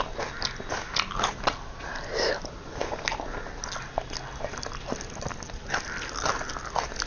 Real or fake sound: real